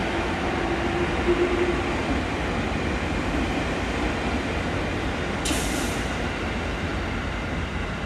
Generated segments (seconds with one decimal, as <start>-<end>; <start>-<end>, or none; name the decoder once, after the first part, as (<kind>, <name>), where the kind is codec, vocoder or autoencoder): 0.0-0.5 (autoencoder, DAC-VAE)